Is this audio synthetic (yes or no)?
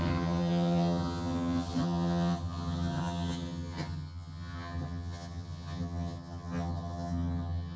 yes